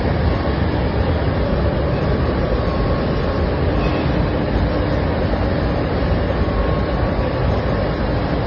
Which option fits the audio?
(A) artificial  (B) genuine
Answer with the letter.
B